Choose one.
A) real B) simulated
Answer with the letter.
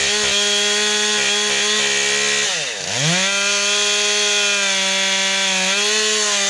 A